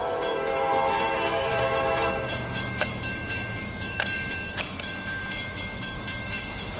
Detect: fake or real fake